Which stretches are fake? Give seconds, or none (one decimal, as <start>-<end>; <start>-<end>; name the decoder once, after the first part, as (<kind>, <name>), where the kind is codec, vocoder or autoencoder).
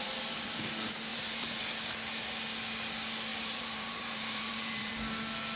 1.1-1.6 (vocoder, BigVGAN v2); 3.3-4.9